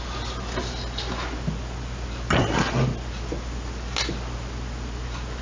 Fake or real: real